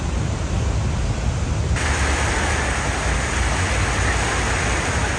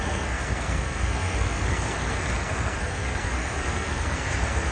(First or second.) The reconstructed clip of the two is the second